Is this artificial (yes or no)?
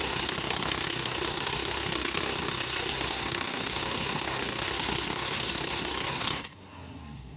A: yes